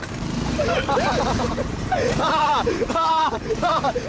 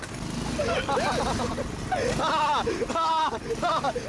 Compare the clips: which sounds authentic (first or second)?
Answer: second